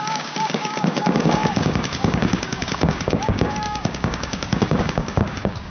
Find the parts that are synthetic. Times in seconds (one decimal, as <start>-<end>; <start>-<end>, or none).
0.0-5.7